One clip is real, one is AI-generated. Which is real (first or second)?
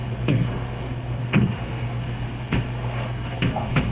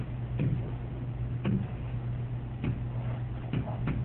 second